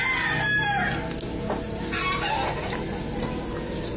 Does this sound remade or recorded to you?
recorded